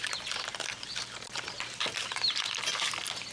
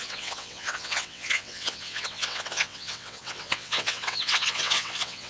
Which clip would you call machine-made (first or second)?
second